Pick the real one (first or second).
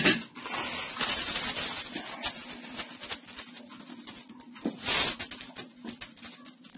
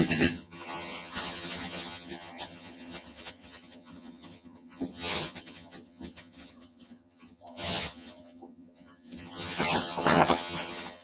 first